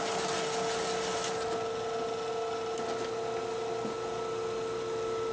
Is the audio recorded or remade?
recorded